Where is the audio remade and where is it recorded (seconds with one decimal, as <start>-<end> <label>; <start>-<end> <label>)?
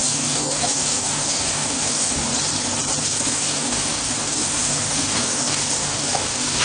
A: 0.0-2.3 remade; 2.3-3.0 recorded; 3.0-6.6 remade